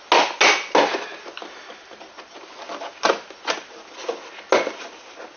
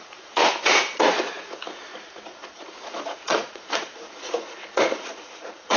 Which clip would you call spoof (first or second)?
second